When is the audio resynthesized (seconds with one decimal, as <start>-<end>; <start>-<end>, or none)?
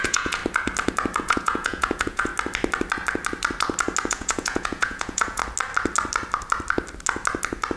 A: 0.0-0.4; 1.2-2.3; 4.1-5.4